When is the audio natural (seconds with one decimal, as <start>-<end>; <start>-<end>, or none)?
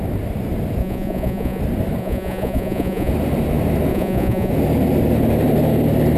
0.0-0.8; 1.6-2.0; 3.1-3.9; 4.5-6.2